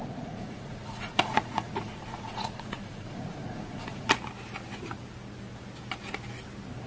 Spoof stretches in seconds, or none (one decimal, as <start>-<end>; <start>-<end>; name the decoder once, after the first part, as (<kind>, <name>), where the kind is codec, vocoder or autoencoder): 0.0-4.1 (vocoder, Vocos)